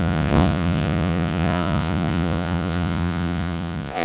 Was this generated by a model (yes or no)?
yes